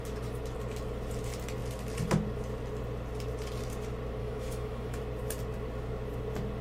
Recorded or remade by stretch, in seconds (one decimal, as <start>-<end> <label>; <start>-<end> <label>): 0.0-4.2 recorded; 4.2-5.0 remade; 5.0-6.6 recorded